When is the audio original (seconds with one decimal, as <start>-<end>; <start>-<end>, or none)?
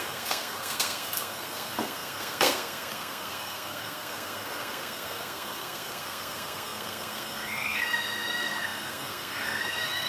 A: none